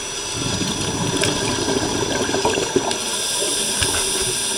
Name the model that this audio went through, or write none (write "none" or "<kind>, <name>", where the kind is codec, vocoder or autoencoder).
none